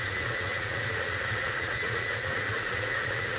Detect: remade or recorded remade